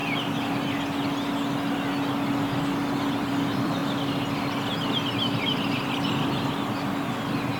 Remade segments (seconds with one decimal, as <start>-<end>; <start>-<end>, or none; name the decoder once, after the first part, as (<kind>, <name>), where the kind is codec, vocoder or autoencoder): 3.1-3.8 (vocoder, BigVGAN v2)